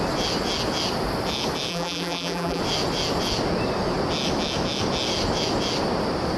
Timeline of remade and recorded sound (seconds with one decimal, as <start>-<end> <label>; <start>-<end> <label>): 0.0-1.7 recorded; 1.7-2.6 remade; 2.6-6.4 recorded